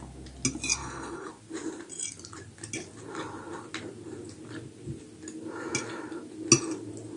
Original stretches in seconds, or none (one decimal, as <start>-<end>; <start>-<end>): 0.0-0.8; 1.3-7.2